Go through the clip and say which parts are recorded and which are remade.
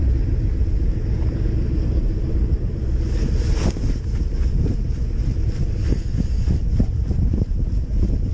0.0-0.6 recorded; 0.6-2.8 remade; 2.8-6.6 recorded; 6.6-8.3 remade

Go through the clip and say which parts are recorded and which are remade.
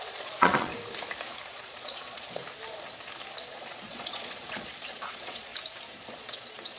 0.0-0.7 remade; 0.7-1.5 recorded; 1.5-2.4 remade; 2.4-3.5 recorded; 3.5-5.5 remade; 5.5-6.1 recorded; 6.1-6.8 remade